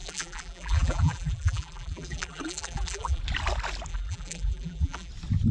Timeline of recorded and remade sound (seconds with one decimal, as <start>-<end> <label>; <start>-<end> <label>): 0.0-3.2 remade; 3.2-3.9 recorded; 3.9-5.1 remade; 5.1-5.5 recorded